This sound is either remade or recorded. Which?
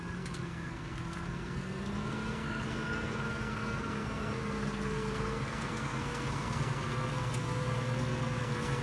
remade